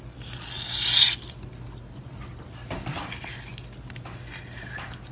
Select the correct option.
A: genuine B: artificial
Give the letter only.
A